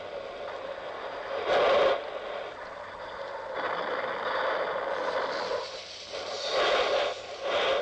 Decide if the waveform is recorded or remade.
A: recorded